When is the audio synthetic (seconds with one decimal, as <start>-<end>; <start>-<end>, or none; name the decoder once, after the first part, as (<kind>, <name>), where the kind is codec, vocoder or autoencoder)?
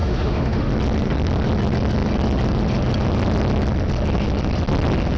0.0-0.7 (autoencoder, DAC-VAE)